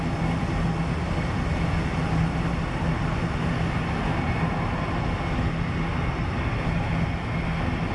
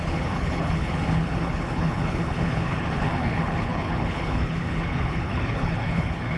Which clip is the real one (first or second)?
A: first